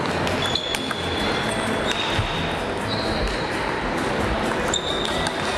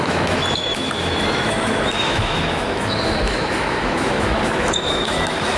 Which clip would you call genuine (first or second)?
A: first